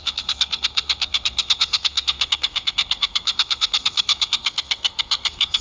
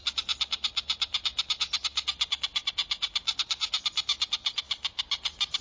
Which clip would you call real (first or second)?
second